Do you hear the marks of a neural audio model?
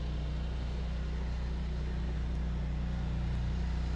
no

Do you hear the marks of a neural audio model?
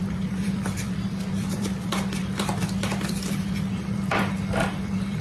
yes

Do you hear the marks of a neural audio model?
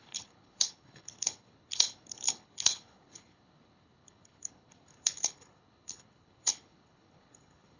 yes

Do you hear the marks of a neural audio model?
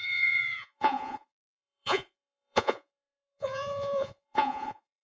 yes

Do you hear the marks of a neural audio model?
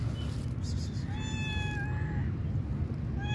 no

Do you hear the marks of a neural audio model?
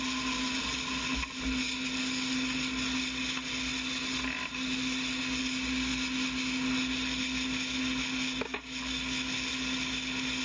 no